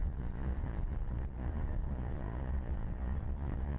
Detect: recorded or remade remade